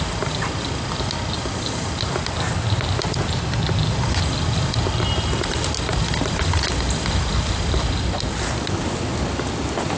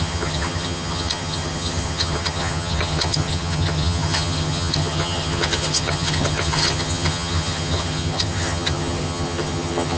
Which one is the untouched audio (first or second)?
first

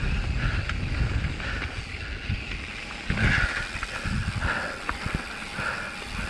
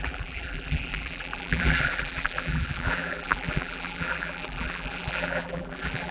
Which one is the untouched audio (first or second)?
first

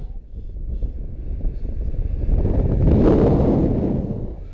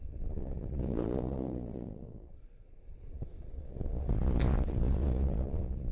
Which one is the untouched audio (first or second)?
first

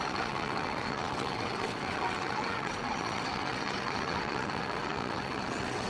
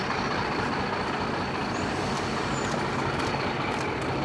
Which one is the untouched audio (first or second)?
second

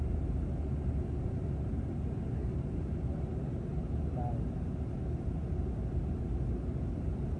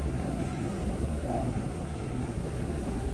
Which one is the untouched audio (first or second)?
first